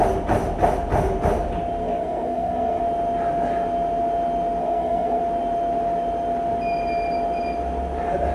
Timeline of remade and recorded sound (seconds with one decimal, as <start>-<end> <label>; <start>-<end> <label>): 0.0-1.8 recorded; 1.8-2.8 remade; 2.8-4.6 recorded; 4.6-5.2 remade; 5.2-8.3 recorded